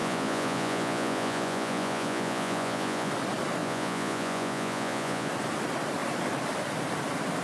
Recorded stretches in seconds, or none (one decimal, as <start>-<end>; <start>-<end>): 3.1-3.6; 5.3-7.4